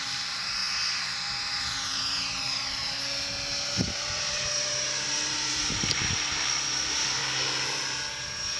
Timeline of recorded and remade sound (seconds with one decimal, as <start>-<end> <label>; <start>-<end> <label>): 0.0-0.6 remade; 0.6-1.4 recorded; 1.4-2.8 remade; 2.8-3.8 recorded; 3.8-7.2 remade; 7.2-8.6 recorded